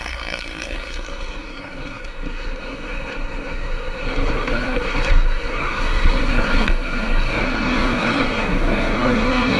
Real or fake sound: fake